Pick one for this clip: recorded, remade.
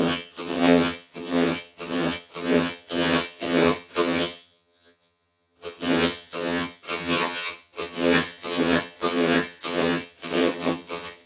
remade